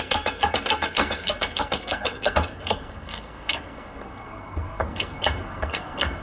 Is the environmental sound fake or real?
fake